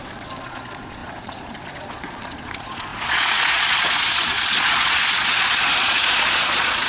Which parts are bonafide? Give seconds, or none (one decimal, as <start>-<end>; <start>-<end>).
none